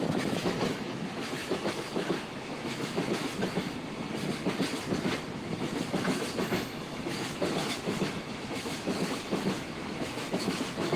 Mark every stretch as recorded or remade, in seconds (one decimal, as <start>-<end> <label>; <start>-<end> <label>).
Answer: 0.0-3.3 remade; 3.3-5.5 recorded; 5.5-11.0 remade